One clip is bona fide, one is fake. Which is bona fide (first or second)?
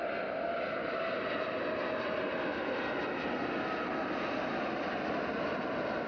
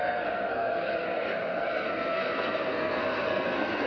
first